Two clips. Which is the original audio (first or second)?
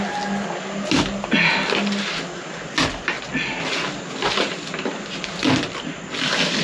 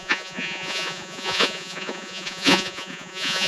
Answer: first